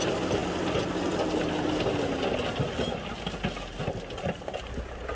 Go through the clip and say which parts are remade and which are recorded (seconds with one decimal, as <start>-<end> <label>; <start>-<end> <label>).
0.0-5.2 recorded